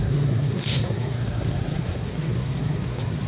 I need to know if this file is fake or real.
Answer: fake